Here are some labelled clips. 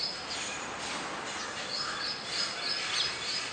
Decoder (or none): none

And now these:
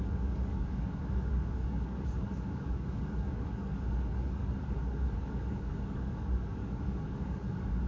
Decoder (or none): codec, DAC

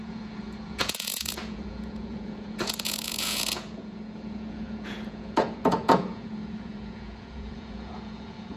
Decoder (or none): vocoder, Vocos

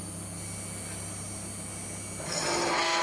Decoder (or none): none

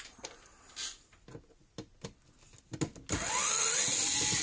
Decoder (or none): none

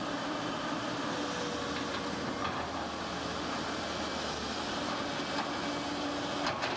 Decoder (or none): none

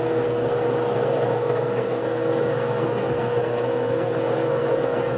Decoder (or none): codec, SNAC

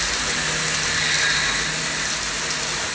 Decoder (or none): none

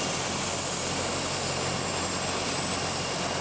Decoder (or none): none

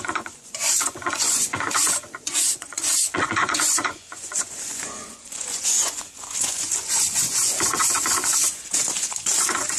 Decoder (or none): vocoder, Vocos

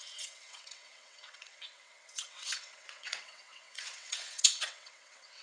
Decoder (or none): vocoder, WaveNeXt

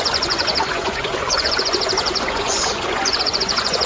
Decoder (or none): vocoder, Vocos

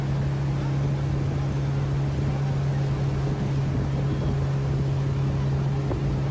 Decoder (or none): none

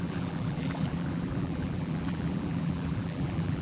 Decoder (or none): vocoder, BigVGAN v2